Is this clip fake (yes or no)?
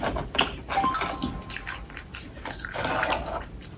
no